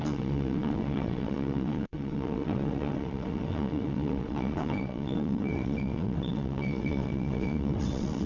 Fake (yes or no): yes